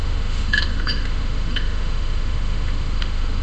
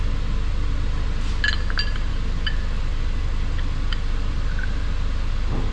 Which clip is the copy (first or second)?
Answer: first